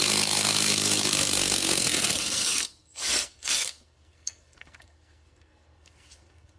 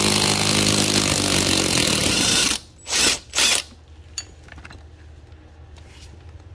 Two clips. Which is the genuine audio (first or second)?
second